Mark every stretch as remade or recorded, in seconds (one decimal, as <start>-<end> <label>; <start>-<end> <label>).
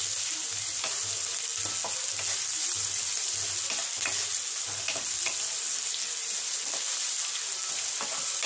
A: 0.0-8.5 recorded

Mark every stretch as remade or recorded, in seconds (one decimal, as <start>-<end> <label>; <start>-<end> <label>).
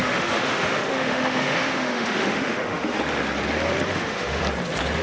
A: 0.0-3.0 remade; 3.0-3.9 recorded; 3.9-4.4 remade; 4.4-5.0 recorded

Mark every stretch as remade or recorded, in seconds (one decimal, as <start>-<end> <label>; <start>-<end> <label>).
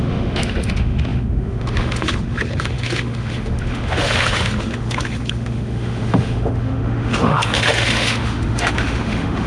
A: 0.0-9.5 remade